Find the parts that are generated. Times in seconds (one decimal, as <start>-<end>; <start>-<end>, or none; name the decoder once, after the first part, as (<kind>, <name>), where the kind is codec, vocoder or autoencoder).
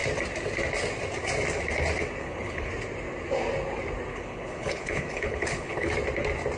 2.2-2.7 (codec, HILCodec); 4.1-5.9